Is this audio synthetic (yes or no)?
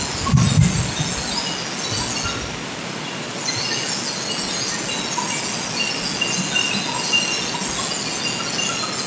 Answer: no